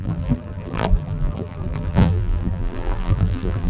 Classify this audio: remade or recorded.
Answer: remade